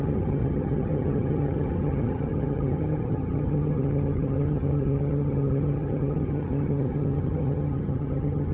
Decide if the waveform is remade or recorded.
remade